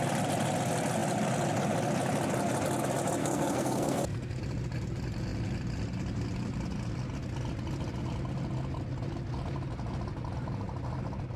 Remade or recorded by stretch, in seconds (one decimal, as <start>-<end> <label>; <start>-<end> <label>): 0.0-3.2 recorded; 3.2-4.4 remade; 4.4-11.4 recorded